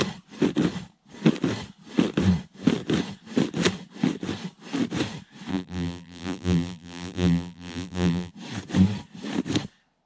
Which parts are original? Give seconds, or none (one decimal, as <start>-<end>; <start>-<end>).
0.0-5.5; 8.3-10.1